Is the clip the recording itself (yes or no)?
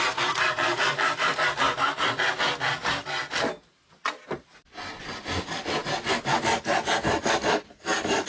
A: yes